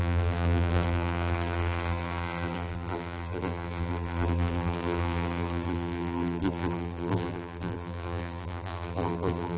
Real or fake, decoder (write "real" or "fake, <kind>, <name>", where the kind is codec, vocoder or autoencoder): fake, vocoder, BigVGAN v2